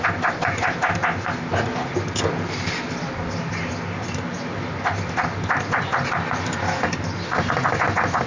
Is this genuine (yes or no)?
yes